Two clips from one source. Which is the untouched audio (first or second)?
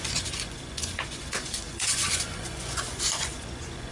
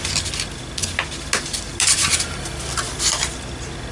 second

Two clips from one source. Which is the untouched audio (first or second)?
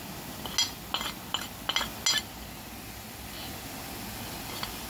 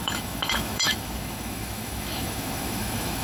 first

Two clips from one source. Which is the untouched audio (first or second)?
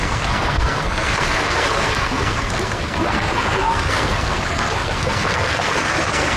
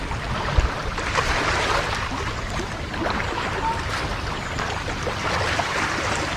second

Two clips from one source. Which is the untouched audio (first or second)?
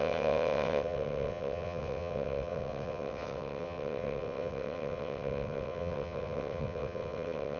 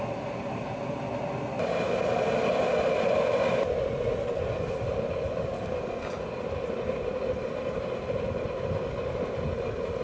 second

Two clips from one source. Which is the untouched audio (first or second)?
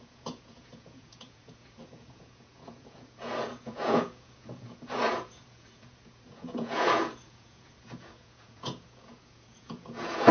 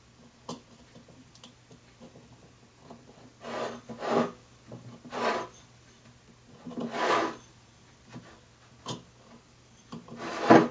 second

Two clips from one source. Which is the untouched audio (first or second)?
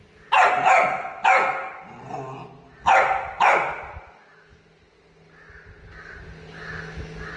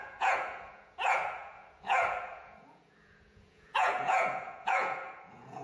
first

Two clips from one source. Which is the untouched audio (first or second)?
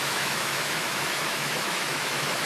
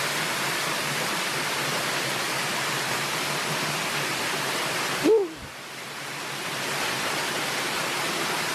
second